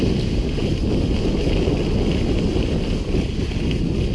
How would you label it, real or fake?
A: real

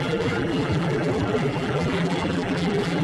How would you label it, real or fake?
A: fake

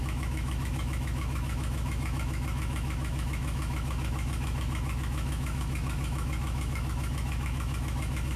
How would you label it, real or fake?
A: fake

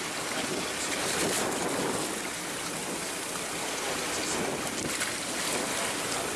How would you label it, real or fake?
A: real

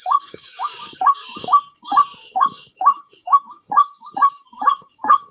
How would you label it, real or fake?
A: fake